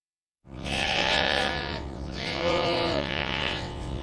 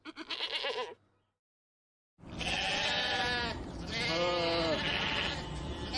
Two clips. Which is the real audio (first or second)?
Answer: second